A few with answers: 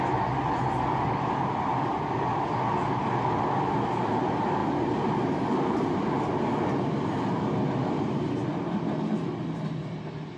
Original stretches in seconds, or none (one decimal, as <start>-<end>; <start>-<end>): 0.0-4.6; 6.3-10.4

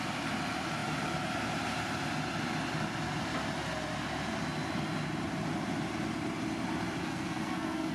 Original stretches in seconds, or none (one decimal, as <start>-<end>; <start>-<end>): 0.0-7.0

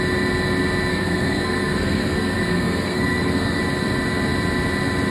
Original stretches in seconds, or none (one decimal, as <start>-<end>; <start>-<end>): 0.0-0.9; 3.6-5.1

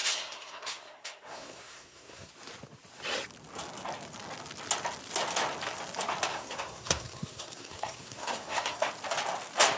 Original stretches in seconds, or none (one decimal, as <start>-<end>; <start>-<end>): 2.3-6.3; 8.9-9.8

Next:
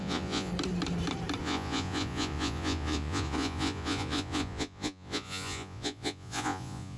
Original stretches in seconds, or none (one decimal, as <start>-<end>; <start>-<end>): 0.5-1.4

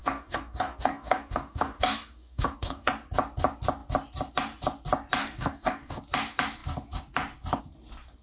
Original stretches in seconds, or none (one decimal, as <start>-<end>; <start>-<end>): 2.9-5.2; 6.0-8.2